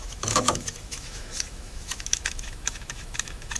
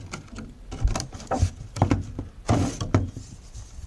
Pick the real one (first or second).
second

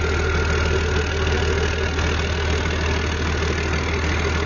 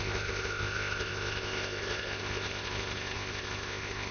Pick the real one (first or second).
first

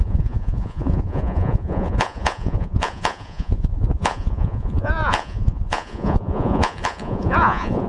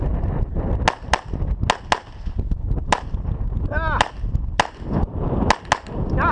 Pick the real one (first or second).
second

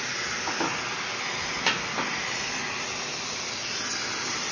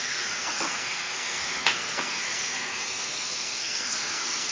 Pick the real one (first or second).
first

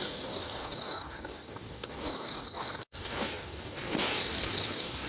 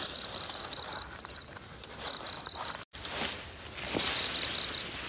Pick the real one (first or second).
second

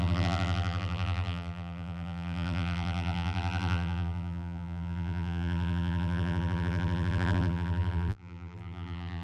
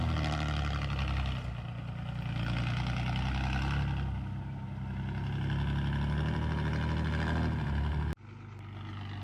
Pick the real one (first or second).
second